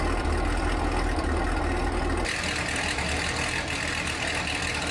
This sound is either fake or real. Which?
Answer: real